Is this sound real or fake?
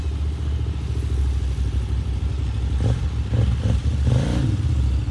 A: real